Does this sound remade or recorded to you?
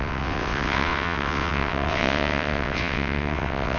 remade